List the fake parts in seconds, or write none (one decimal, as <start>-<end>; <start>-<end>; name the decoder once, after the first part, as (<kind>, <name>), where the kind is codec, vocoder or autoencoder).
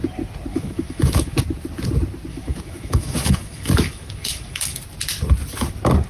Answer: 0.5-1.4 (autoencoder, DAC-VAE); 2.3-4.8